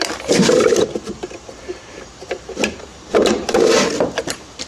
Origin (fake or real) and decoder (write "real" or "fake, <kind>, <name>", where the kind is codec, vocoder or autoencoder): fake, vocoder, BigVGAN v2